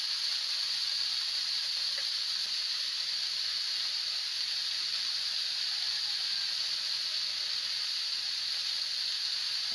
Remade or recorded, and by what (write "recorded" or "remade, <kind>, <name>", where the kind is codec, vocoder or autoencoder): recorded